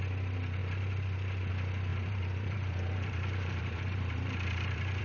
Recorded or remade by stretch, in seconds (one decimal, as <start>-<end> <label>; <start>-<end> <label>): 0.0-1.9 recorded; 1.9-5.0 remade